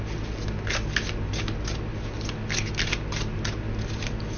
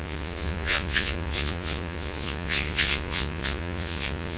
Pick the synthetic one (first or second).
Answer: second